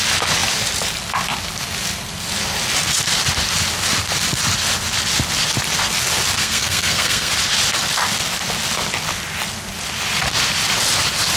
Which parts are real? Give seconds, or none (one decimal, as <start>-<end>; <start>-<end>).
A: 0.0-6.4; 7.3-11.4